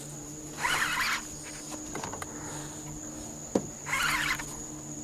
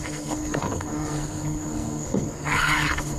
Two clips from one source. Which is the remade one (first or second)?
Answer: second